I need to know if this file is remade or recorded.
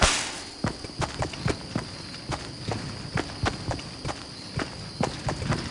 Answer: recorded